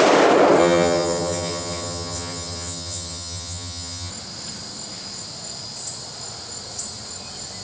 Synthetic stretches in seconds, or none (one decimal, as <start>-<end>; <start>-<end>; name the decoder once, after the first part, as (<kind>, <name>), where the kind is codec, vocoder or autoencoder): 0.6-4.1 (vocoder, HiFi-GAN)